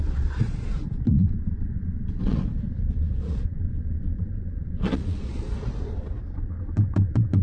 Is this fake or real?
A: fake